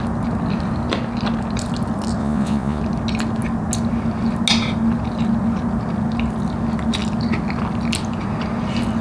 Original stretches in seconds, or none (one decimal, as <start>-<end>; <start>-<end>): 0.0-2.2; 2.8-9.0